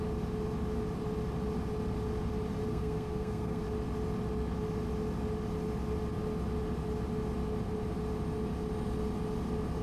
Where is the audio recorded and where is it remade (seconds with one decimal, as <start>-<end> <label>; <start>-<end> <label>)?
0.0-2.7 recorded; 2.7-3.6 remade; 3.6-9.8 recorded